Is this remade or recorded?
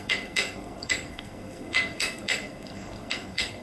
remade